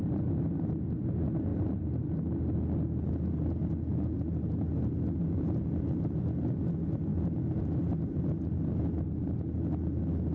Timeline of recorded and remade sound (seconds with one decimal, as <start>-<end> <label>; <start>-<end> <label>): 0.0-10.3 recorded